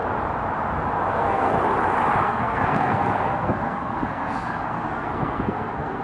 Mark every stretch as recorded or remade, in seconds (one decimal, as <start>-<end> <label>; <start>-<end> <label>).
0.0-1.1 recorded; 1.1-1.5 remade; 1.5-2.2 recorded; 2.2-6.0 remade